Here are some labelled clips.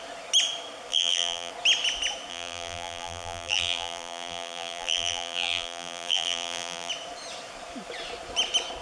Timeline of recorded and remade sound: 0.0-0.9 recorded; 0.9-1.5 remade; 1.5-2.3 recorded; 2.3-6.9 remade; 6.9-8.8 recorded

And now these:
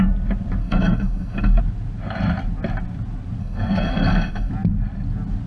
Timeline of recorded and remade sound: 0.0-0.6 recorded; 0.6-1.6 remade; 1.6-3.4 recorded; 3.4-4.5 remade; 4.5-5.5 recorded

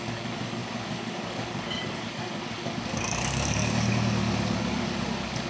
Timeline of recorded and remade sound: 0.0-5.5 remade

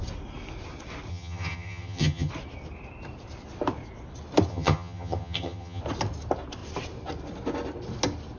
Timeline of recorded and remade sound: 0.0-1.1 recorded; 1.1-2.3 remade; 2.3-4.5 recorded; 4.5-5.8 remade; 5.8-8.4 recorded

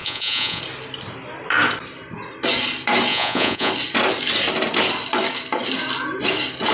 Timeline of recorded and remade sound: 0.0-0.6 remade; 0.6-3.1 recorded; 3.1-3.7 remade; 3.7-6.7 recorded